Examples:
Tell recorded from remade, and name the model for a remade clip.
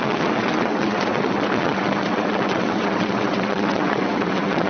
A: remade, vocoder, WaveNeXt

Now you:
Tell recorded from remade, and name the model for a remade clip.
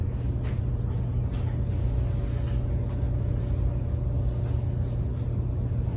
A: recorded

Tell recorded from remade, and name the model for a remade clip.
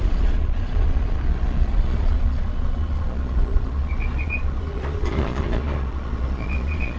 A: remade, vocoder, Vocos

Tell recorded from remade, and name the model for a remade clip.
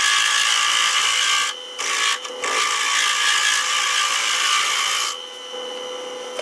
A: recorded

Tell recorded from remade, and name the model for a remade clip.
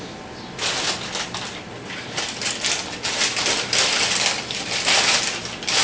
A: recorded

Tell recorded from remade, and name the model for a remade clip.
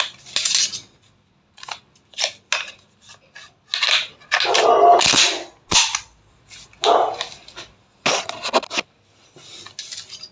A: recorded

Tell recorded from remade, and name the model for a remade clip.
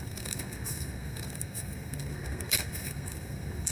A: remade, codec, SNAC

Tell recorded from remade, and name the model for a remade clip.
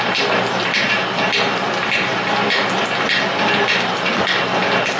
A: recorded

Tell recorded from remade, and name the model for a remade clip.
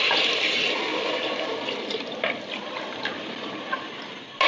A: recorded